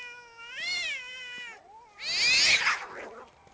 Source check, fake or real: real